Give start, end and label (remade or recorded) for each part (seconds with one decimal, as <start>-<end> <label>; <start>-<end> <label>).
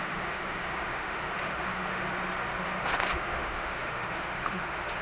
0.0-2.0 remade; 2.0-2.6 recorded; 2.6-5.0 remade